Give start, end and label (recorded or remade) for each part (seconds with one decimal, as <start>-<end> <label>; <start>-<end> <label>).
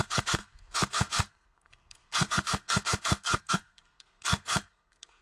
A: 0.0-5.2 remade